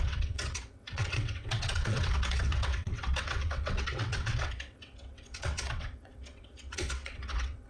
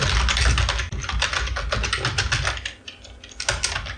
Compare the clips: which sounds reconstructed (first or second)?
first